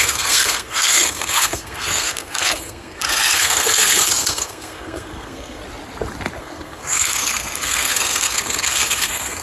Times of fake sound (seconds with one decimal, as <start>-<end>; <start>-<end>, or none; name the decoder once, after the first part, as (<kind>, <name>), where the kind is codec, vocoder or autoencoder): 0.0-5.6 (codec, SNAC); 6.4-9.4